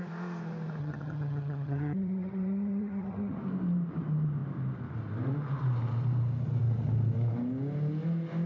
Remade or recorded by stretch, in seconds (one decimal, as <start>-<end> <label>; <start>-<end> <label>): 0.0-0.8 recorded; 0.8-3.4 remade; 3.4-8.5 recorded